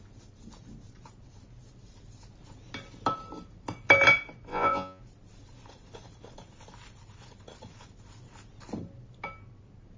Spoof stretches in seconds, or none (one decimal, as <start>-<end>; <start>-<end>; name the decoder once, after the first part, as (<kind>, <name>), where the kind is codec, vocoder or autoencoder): 4.5-5.0 (vocoder, Vocos)